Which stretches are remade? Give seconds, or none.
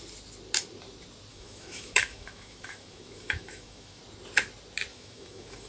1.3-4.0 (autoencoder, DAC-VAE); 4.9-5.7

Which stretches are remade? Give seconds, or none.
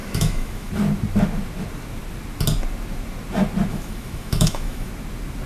0.0-0.7 (autoencoder, DAC-VAE); 3.7-4.9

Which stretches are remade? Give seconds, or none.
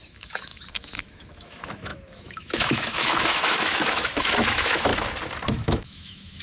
0.0-4.9 (autoencoder, DAC-VAE); 5.5-6.4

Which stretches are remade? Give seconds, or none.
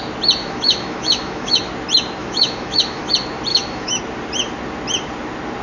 0.4-1.7 (autoencoder, DAC-VAE); 2.2-3.1; 3.5-4.0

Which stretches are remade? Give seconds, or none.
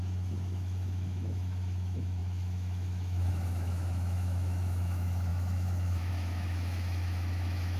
0.0-7.8 (autoencoder, DAC-VAE)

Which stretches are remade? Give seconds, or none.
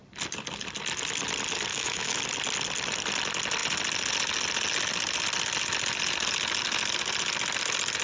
1.7-2.2 (autoencoder, DAC-VAE)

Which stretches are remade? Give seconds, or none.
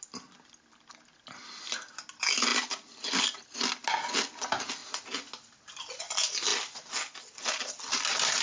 none